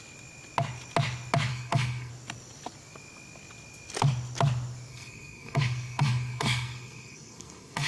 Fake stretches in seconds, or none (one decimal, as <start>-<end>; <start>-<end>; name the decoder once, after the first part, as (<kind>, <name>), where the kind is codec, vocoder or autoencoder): 1.5-2.1 (codec, SNAC); 4.9-7.9